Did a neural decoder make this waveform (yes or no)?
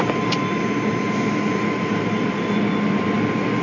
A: no